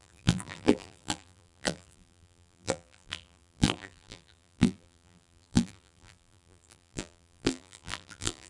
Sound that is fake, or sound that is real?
fake